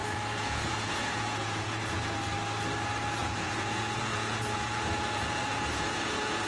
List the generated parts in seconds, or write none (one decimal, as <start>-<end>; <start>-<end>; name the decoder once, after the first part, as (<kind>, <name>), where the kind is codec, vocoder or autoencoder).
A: 0.0-2.2 (vocoder, Vocos); 3.2-6.5